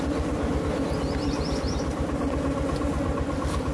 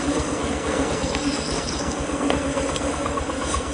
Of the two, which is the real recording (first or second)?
first